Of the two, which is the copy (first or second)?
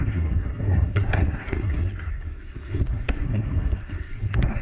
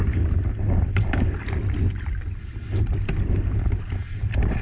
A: first